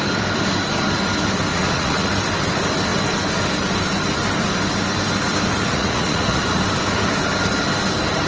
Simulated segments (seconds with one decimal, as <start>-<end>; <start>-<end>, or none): 1.5-2.1; 5.7-6.6